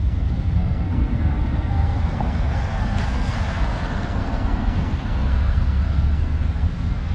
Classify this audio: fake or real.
fake